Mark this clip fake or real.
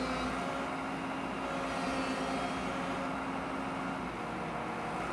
real